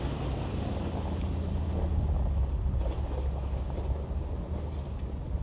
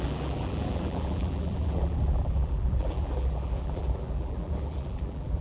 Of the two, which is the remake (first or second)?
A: second